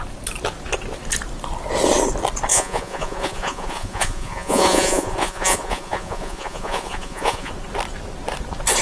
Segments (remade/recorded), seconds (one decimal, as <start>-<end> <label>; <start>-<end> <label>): 0.0-2.5 recorded; 2.5-7.5 remade; 7.5-8.8 recorded